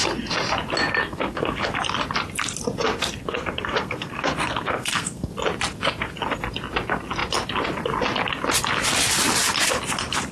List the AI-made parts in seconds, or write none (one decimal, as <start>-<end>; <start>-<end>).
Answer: 1.0-1.7; 3.2-5.3